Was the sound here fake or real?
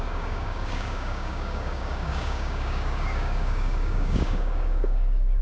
fake